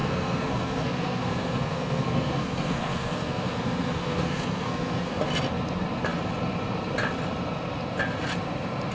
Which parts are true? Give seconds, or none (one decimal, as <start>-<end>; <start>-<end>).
5.2-8.9